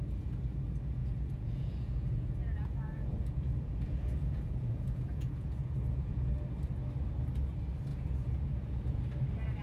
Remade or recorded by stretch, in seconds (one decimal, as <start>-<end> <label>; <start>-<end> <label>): 0.0-1.0 recorded; 1.0-6.3 remade; 6.3-7.9 recorded; 7.9-9.0 remade; 9.0-9.6 recorded